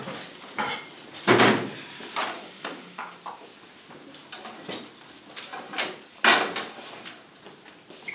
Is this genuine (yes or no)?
yes